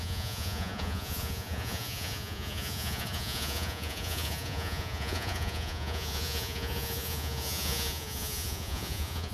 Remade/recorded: remade